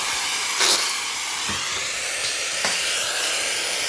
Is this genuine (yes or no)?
no